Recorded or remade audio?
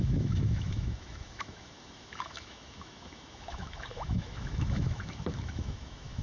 remade